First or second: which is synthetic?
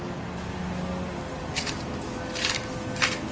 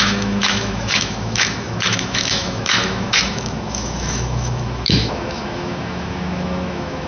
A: second